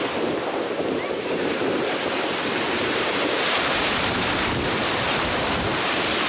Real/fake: fake